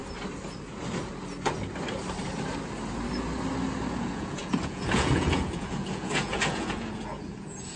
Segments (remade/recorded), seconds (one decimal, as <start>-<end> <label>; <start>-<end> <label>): 0.0-4.0 recorded; 4.0-7.8 remade